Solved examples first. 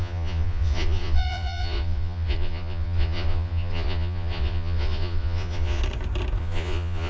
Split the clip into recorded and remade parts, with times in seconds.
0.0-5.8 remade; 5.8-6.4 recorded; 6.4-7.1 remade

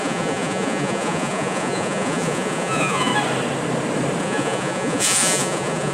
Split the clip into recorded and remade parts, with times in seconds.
0.0-3.1 remade; 3.1-4.2 recorded; 4.2-5.9 remade

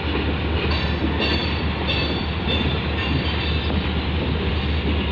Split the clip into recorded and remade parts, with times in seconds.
0.0-5.1 recorded

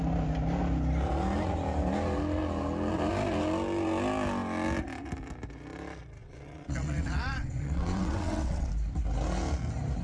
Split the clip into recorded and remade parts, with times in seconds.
0.0-6.2 recorded; 6.2-8.7 remade; 8.7-10.0 recorded

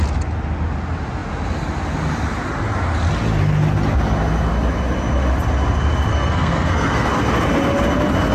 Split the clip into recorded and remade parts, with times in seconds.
0.0-6.1 recorded; 6.1-7.1 remade; 7.1-8.3 recorded

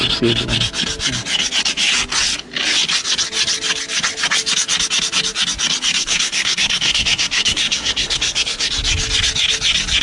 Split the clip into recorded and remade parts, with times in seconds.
0.0-6.0 recorded; 6.0-8.7 remade; 8.7-10.0 recorded